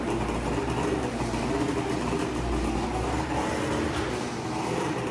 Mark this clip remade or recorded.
recorded